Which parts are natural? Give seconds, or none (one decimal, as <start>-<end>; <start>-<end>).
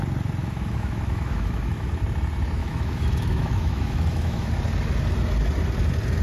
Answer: 0.0-0.4; 1.9-2.6; 4.5-6.2